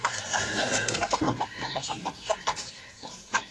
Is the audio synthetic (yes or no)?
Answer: yes